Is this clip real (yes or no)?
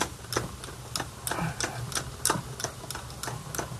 yes